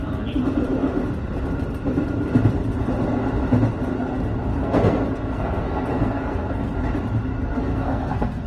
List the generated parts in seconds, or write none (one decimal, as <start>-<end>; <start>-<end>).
4.5-6.7; 7.3-8.5